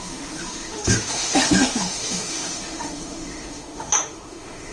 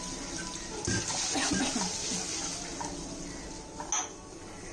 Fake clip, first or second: first